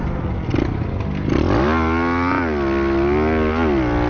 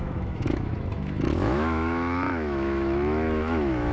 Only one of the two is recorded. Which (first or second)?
first